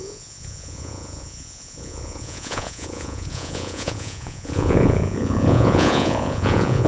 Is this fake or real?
fake